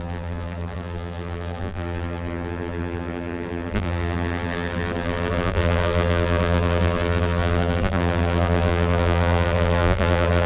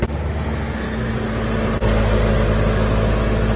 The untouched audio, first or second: second